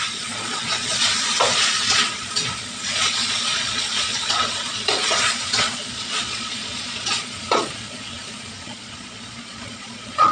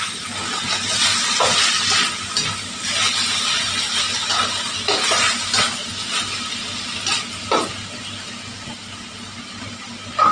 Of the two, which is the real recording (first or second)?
second